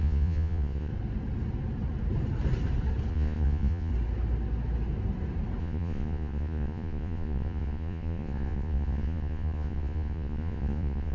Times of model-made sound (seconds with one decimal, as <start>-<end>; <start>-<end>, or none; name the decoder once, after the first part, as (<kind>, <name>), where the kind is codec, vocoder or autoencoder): 0.0-0.9 (vocoder, Vocos); 3.1-3.9; 5.6-11.1